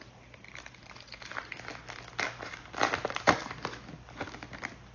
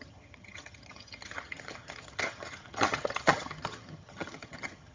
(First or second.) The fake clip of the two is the second